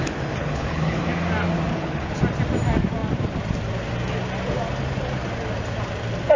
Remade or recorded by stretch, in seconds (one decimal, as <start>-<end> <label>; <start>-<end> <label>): 0.0-0.4 recorded; 0.4-1.0 remade; 1.0-1.7 recorded; 1.7-2.2 remade; 2.2-6.4 recorded